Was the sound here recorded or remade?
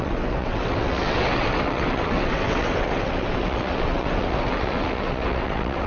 remade